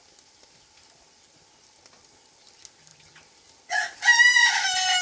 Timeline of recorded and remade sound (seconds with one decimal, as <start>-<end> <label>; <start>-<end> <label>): 0.0-5.0 recorded